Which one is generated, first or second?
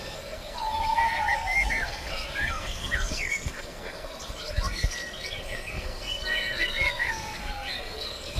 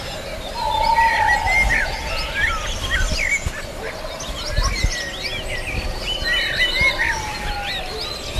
first